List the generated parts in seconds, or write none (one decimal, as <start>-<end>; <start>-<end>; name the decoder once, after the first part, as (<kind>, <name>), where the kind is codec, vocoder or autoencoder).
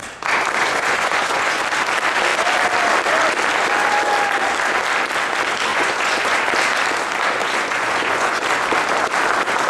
0.6-1.6 (vocoder, Vocos); 5.7-6.4; 7.4-8.4